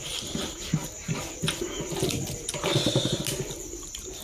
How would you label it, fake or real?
real